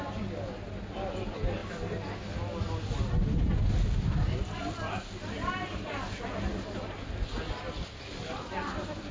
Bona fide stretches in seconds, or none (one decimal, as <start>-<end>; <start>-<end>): 0.0-9.1

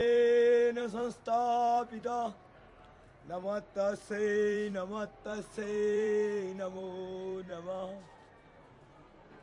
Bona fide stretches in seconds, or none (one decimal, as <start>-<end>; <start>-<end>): none

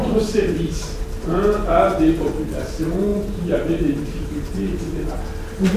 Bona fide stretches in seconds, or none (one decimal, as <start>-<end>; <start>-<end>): 1.0-3.1; 4.8-5.8

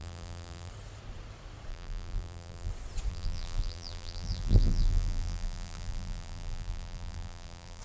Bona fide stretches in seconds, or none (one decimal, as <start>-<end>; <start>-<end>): 0.7-1.7; 2.7-3.1

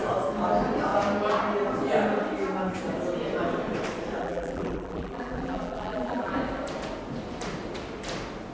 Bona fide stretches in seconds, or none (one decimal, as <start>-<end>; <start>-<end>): 0.0-4.2; 6.3-8.5

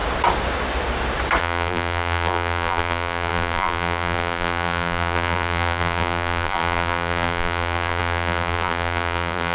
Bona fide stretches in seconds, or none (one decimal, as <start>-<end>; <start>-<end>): 0.0-1.4